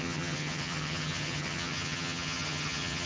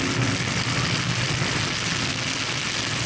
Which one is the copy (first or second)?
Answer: first